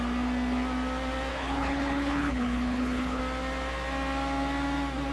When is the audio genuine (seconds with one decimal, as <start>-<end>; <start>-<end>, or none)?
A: 0.0-1.3; 3.2-5.1

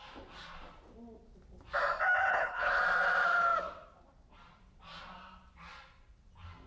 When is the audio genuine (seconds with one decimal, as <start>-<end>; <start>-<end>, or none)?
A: 0.0-2.3; 2.8-6.7

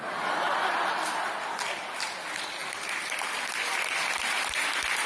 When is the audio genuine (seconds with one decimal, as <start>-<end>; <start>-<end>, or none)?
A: 0.0-5.1